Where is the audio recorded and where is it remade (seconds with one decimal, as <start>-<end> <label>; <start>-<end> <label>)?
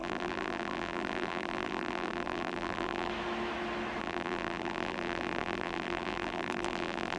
0.0-3.1 remade; 3.1-4.0 recorded; 4.0-7.2 remade